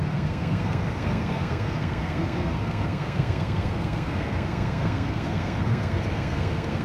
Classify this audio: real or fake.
fake